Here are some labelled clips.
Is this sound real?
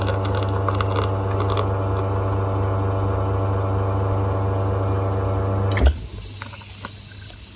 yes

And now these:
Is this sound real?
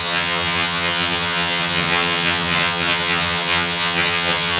no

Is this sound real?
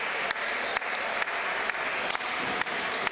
yes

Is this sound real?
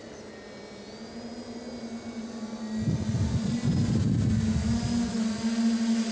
yes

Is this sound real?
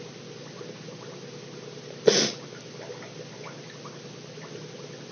yes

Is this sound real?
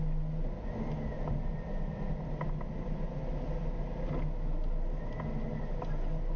yes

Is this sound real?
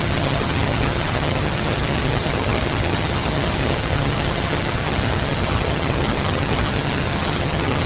no